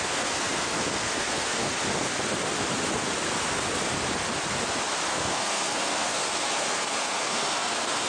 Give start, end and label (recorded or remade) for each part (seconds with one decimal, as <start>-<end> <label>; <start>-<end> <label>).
0.0-1.7 remade; 1.7-5.1 recorded; 5.1-8.1 remade